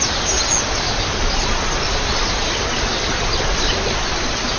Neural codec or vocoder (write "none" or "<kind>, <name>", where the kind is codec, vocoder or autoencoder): none